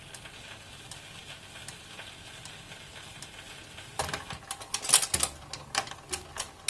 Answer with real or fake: real